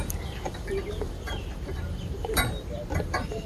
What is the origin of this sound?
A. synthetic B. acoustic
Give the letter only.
A